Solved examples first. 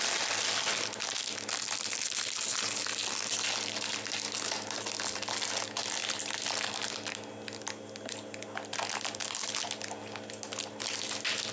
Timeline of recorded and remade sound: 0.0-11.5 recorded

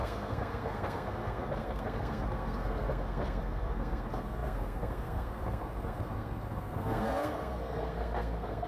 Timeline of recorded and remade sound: 0.0-8.7 remade

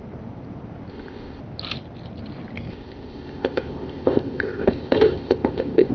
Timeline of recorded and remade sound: 0.0-0.9 recorded; 0.9-1.4 remade; 1.4-2.7 recorded; 2.7-5.9 remade

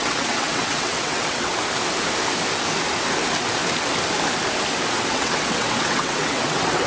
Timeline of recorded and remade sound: 0.0-1.5 remade; 1.5-5.1 recorded; 5.1-6.9 remade

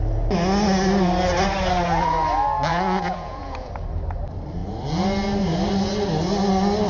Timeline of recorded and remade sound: 0.0-2.7 recorded; 2.7-3.7 remade; 3.7-6.9 recorded

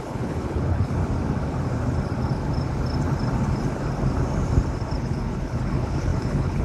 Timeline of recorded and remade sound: 0.0-1.0 remade; 1.0-5.0 recorded; 5.0-6.6 remade

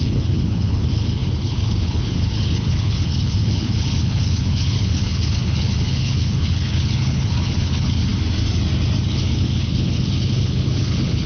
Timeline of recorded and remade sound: 0.0-8.1 remade; 8.1-9.1 recorded; 9.1-11.3 remade